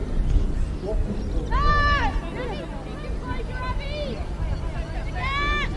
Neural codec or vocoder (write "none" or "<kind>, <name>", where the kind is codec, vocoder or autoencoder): none